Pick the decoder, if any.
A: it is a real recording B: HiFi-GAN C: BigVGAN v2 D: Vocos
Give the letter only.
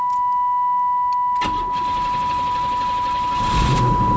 A